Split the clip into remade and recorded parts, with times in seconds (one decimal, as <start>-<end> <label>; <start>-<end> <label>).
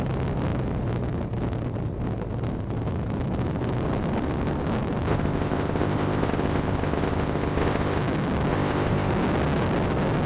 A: 0.0-5.1 recorded; 5.1-8.0 remade; 8.0-8.5 recorded; 8.5-9.1 remade; 9.1-10.3 recorded